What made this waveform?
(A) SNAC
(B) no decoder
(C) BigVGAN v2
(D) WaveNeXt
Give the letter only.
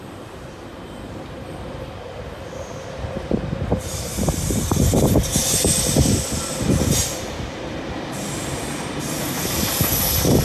C